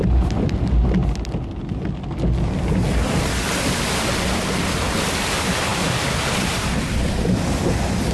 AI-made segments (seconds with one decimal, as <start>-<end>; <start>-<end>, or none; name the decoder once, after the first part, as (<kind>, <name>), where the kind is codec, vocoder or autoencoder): 5.7-7.6 (vocoder, BigVGAN v2)

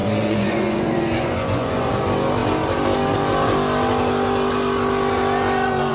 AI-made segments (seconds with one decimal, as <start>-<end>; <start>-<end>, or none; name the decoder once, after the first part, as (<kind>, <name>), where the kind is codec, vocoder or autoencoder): 0.0-1.9 (vocoder, Vocos)

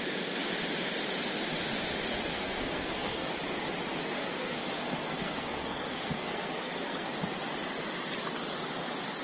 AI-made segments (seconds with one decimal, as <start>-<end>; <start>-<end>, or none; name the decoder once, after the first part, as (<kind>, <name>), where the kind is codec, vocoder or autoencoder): 2.3-3.3 (codec, SNAC); 4.0-7.1

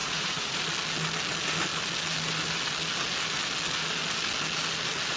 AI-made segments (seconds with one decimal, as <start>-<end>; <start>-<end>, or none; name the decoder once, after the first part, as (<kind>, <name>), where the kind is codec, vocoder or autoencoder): 0.0-0.6 (vocoder, Vocos)

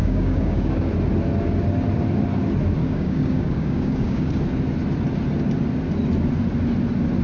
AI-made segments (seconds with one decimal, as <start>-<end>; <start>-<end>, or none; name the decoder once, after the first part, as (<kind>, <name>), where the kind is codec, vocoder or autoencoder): 0.0-0.9 (codec, DAC); 2.8-4.3

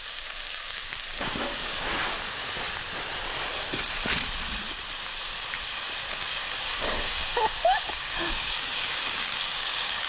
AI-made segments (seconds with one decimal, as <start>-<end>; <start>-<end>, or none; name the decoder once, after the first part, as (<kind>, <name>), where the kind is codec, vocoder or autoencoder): 0.0-1.9 (codec, DAC); 6.1-7.3; 7.9-10.1

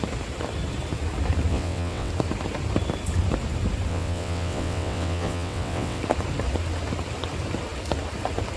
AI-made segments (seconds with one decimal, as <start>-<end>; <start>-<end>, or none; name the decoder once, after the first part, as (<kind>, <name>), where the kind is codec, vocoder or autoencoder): 1.5-2.1 (vocoder, WaveNeXt); 3.9-6.0